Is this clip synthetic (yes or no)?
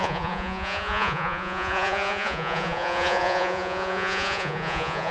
yes